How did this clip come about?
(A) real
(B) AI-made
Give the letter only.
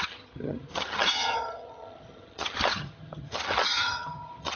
B